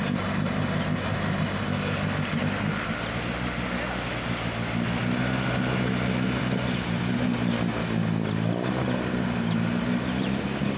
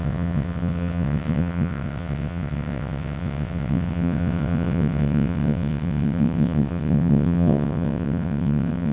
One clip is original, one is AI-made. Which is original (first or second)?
first